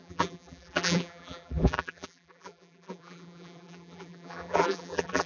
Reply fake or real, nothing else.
fake